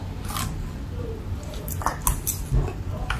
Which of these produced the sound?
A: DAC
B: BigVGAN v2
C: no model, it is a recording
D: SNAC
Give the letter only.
C